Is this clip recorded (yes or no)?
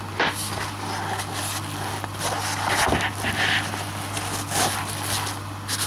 yes